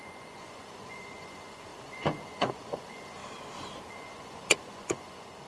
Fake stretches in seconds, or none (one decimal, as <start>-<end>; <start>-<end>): 0.0-3.2; 3.9-5.5